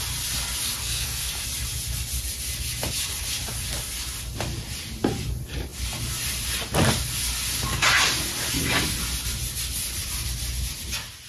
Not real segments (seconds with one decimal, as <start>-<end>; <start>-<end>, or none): 0.8-1.3